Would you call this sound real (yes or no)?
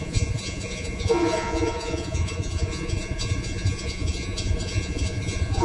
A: no